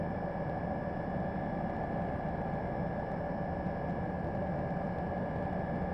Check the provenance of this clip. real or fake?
real